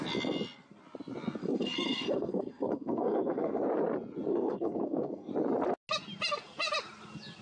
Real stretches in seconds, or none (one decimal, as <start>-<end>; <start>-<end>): 0.0-1.4; 3.6-4.3; 5.3-7.4